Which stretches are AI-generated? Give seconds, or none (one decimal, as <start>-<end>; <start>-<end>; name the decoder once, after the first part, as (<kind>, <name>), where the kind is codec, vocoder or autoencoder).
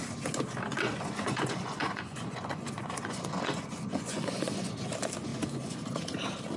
0.7-4.7 (vocoder, Vocos); 5.3-5.8